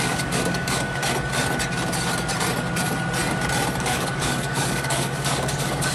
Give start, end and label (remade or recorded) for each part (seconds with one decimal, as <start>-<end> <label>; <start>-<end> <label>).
0.0-1.0 remade; 1.0-3.8 recorded; 3.8-5.9 remade